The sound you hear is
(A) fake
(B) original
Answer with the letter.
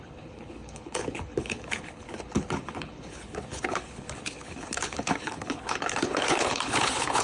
A